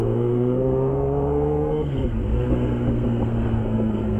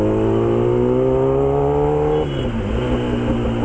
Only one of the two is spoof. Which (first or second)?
first